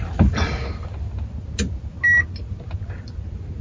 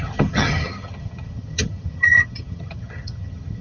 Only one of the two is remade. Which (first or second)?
second